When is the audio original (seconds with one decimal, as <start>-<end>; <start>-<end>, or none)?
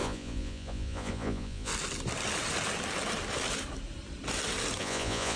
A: 1.7-4.8